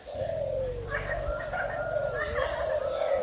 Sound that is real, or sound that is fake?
fake